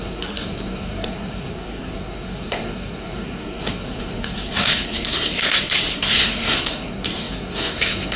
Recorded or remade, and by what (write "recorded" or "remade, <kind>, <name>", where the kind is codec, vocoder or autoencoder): remade, codec, SNAC